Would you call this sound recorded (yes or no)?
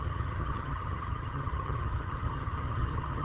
no